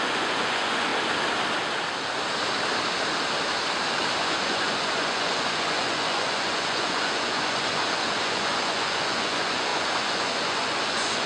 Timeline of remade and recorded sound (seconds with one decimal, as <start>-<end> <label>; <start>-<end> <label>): 0.0-0.9 remade; 0.9-4.2 recorded; 4.2-11.3 remade

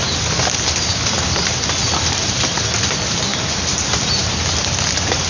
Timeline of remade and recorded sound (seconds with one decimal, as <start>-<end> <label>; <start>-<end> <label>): 0.0-5.3 recorded

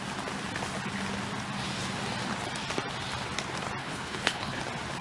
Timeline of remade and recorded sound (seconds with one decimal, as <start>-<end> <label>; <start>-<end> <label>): 0.0-3.8 recorded; 3.8-4.6 remade; 4.6-5.0 recorded

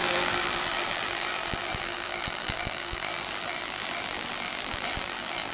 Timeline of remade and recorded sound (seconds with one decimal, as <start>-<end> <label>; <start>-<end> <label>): 0.0-5.5 remade